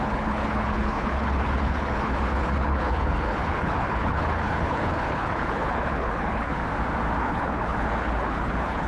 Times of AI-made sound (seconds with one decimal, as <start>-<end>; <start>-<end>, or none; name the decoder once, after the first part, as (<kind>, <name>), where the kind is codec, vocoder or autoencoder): 0.0-6.6 (codec, HILCodec); 7.2-8.9